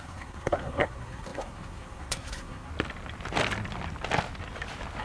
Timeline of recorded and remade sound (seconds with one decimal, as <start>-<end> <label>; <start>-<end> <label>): 0.0-2.7 remade; 2.7-5.0 recorded